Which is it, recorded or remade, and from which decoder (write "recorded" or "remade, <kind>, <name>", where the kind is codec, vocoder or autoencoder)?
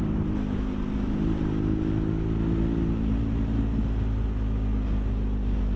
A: recorded